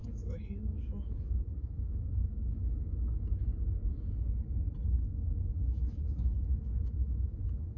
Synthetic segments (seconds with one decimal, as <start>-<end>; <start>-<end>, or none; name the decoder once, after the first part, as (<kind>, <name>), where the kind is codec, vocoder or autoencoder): 0.0-3.5 (autoencoder, DAC-VAE); 4.9-7.8